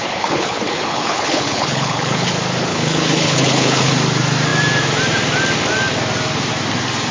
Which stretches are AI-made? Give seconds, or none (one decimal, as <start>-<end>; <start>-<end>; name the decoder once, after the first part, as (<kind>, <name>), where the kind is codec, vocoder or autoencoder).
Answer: 0.0-2.3 (codec, HILCodec); 2.7-3.9